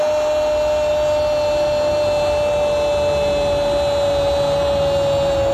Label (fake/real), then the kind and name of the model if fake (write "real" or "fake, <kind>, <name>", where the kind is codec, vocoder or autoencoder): real